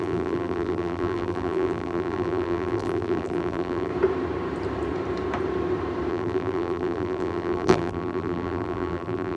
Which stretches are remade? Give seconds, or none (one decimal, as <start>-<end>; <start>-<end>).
0.0-3.9; 6.1-9.4